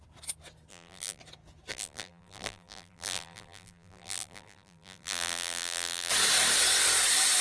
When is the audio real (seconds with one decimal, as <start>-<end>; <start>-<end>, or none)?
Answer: 0.0-0.7; 1.2-1.7; 6.1-7.4